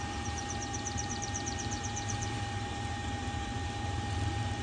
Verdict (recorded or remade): remade